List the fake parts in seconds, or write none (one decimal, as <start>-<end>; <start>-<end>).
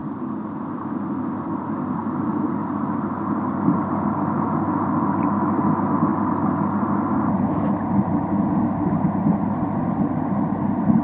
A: none